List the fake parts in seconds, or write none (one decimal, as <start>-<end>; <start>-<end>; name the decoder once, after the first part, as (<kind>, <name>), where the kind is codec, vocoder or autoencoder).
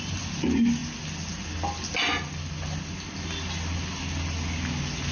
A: none